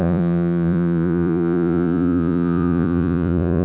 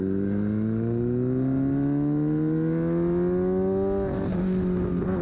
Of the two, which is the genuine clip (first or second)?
second